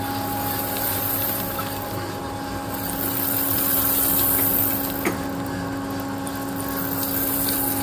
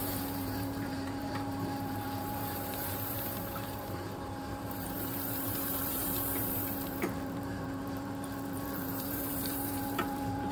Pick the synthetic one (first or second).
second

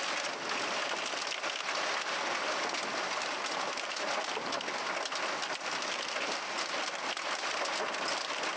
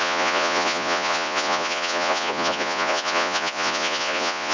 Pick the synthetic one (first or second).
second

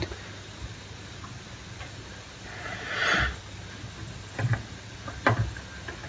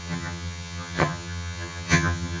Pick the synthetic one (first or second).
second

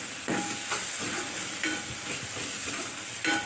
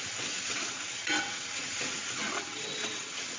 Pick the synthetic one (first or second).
second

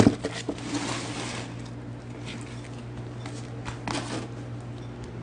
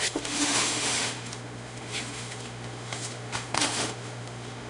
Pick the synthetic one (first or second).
second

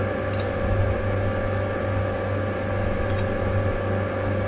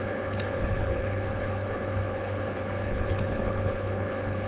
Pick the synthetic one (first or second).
second